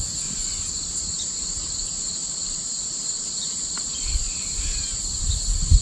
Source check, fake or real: fake